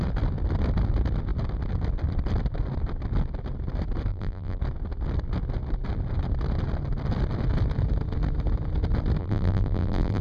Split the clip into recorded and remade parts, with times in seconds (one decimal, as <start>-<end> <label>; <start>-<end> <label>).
0.0-4.1 recorded; 4.1-4.6 remade; 4.6-9.2 recorded; 9.2-10.2 remade